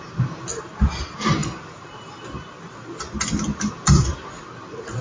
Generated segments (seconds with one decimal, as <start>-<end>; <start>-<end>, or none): none